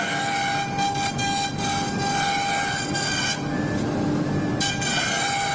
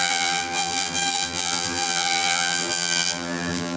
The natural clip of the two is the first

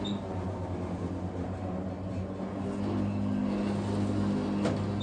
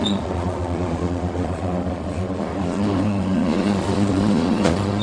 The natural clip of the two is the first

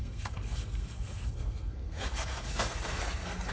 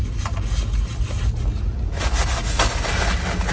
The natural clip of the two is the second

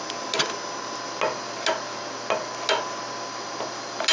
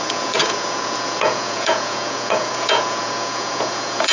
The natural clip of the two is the first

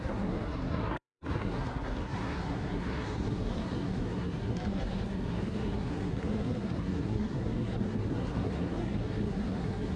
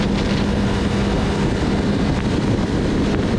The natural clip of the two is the second